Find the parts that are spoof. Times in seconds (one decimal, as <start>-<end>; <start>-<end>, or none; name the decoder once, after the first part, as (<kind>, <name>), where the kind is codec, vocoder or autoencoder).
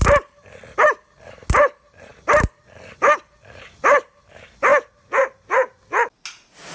none